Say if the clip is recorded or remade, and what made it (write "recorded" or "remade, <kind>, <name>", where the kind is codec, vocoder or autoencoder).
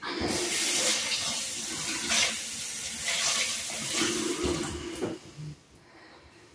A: recorded